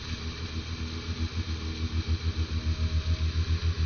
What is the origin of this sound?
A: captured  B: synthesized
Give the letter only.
A